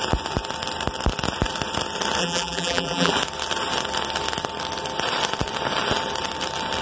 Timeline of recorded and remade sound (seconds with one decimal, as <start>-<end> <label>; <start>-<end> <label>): 0.0-2.2 recorded; 2.2-3.1 remade; 3.1-6.8 recorded

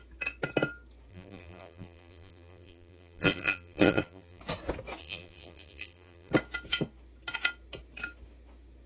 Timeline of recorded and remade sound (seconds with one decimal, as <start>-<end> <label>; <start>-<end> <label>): 0.0-1.1 recorded; 1.1-4.4 remade; 4.4-5.0 recorded; 5.0-6.3 remade; 6.3-8.9 recorded

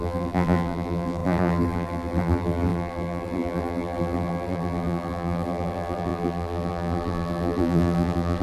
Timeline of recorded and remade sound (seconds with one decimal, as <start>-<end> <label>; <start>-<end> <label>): 0.0-8.4 remade

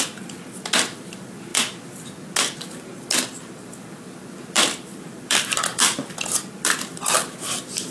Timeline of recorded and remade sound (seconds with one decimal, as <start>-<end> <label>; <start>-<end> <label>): 0.0-1.5 remade; 1.5-3.7 recorded; 3.7-7.9 remade

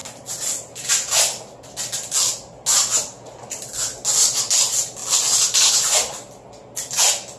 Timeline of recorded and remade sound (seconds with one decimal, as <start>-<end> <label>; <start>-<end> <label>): 0.0-7.4 recorded

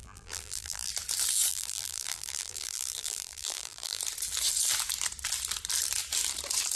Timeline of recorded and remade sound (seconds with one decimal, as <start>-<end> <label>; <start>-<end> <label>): 0.0-0.9 remade; 0.9-1.5 recorded; 1.5-4.0 remade; 4.0-6.8 recorded

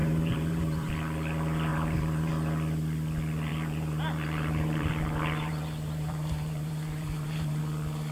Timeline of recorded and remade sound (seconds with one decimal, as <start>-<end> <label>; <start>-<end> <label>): 0.0-0.9 remade; 0.9-1.7 recorded; 1.7-2.3 remade; 2.3-3.5 recorded; 3.5-7.6 remade; 7.6-8.1 recorded